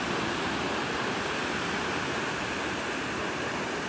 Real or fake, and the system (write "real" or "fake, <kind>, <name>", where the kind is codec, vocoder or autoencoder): real